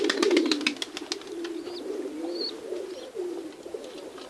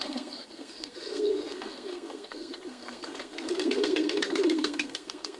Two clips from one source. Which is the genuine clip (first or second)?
first